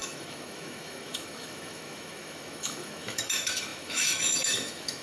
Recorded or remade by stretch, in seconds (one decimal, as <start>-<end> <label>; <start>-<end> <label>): 0.0-5.0 remade